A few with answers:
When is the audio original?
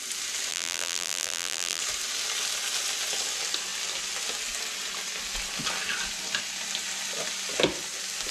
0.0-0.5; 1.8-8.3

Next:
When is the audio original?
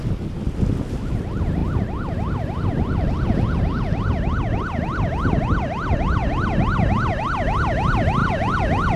0.0-8.2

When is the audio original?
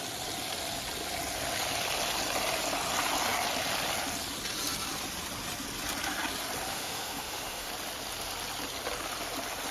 0.0-6.7; 7.7-9.7